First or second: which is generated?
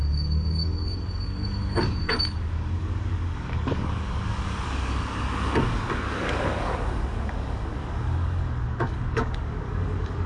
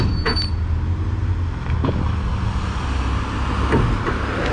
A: first